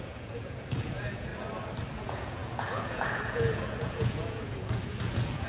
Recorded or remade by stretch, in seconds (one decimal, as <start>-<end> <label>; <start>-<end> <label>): 0.0-1.3 remade; 1.3-1.9 recorded; 1.9-5.5 remade